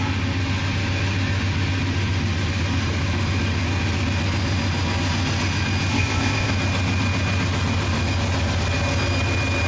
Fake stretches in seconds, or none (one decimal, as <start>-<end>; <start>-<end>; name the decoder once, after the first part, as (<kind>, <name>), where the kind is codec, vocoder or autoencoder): 5.9-6.5 (codec, ZipCodec)